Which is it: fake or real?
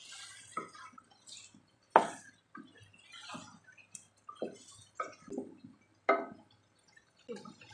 real